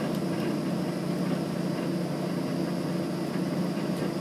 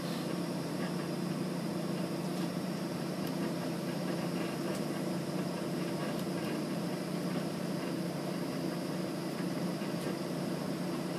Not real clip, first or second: second